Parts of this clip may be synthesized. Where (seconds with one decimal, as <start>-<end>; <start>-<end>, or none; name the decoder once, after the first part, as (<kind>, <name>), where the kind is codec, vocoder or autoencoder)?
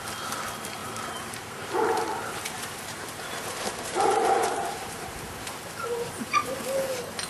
0.8-5.2 (vocoder, BigVGAN v2)